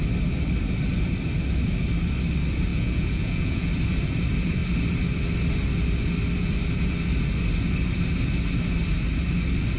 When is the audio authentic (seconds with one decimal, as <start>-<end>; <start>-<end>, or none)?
0.0-2.7; 3.7-9.8